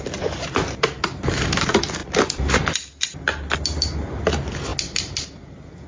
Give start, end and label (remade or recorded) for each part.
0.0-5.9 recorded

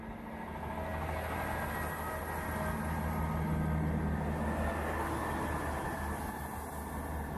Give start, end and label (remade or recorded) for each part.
0.0-7.4 recorded